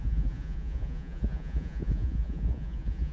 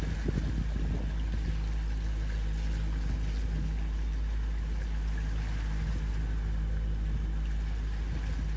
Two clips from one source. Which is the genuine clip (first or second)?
second